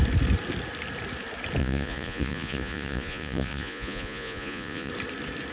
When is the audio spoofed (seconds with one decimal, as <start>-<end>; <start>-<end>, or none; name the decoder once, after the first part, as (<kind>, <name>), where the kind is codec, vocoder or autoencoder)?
1.6-4.9 (vocoder, Vocos)